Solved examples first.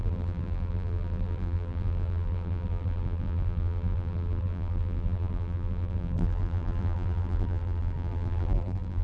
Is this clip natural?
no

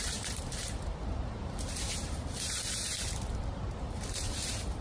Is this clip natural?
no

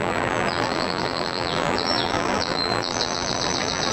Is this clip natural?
no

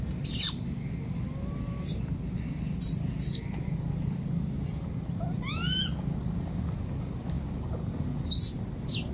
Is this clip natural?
yes